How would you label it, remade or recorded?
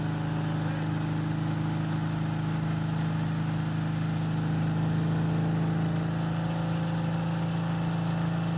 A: recorded